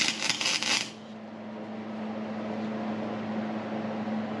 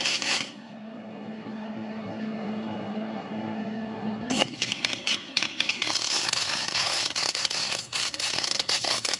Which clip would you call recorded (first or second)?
first